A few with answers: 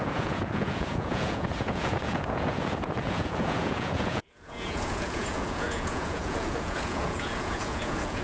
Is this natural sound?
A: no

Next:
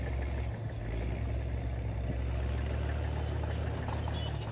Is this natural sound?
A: yes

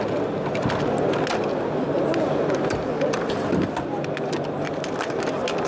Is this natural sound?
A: yes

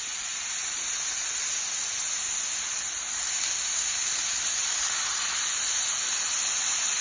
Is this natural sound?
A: yes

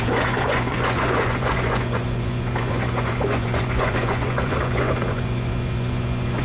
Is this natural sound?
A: no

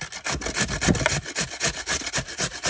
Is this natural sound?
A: yes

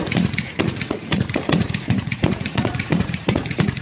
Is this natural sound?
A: no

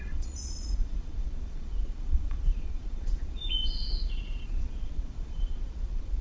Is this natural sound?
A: no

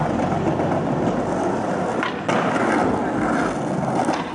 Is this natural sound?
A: yes